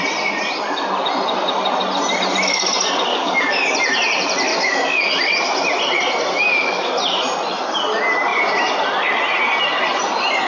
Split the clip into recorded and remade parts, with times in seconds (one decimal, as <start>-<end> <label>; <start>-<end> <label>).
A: 0.0-3.1 recorded; 3.1-3.7 remade; 3.7-4.5 recorded; 4.5-5.1 remade; 5.1-6.4 recorded; 6.4-6.9 remade; 6.9-10.5 recorded